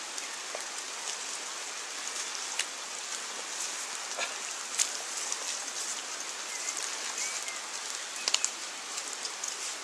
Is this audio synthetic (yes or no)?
no